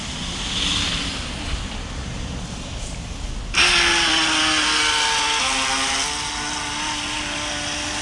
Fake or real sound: real